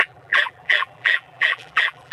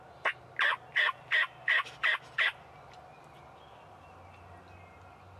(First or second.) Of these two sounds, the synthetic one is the first